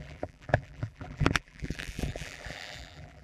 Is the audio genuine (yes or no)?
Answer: no